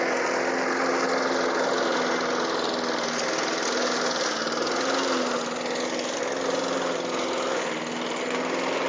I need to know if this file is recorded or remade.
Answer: recorded